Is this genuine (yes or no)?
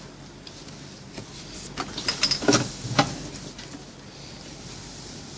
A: yes